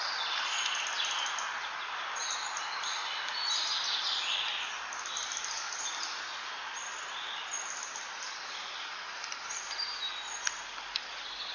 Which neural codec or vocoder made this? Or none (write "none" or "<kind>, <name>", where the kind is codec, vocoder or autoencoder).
none